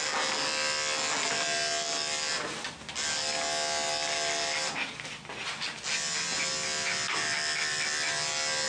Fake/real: real